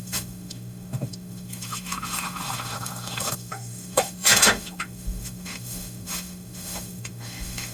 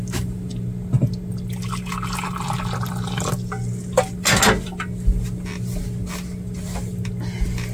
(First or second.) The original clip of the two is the second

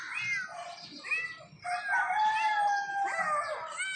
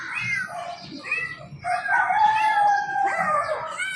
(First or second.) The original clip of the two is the first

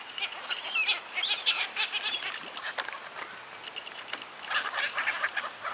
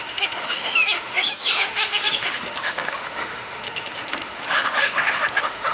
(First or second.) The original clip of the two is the first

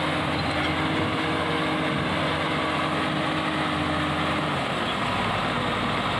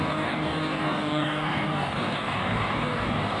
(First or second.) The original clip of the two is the first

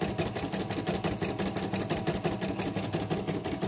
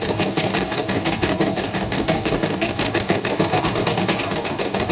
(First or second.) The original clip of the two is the first